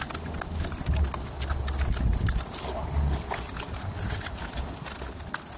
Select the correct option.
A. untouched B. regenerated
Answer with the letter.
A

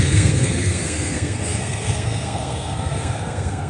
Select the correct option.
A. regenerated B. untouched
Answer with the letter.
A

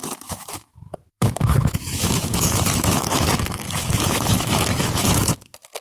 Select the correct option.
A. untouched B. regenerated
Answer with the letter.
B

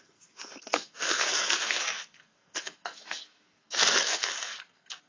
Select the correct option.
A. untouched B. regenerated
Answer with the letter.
B